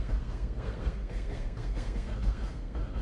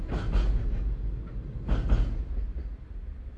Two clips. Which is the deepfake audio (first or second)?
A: first